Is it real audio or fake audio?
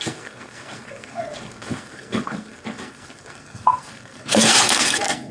fake